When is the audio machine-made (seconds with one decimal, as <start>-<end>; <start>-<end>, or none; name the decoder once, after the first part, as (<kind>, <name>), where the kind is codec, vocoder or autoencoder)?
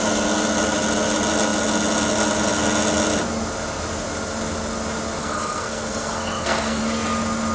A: 5.2-6.8 (codec, SNAC)